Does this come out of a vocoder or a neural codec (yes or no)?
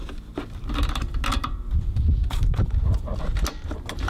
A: no